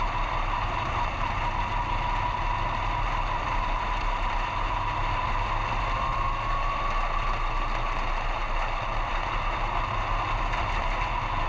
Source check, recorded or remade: recorded